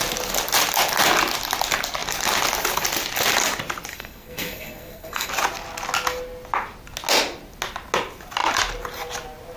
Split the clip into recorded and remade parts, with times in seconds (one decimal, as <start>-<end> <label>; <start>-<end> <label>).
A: 0.0-3.9 recorded; 3.9-5.3 remade; 5.3-9.6 recorded